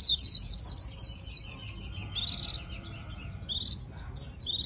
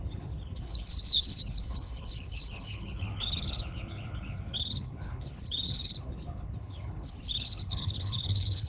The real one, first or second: first